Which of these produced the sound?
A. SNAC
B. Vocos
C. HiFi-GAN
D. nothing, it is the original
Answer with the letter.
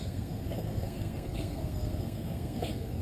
A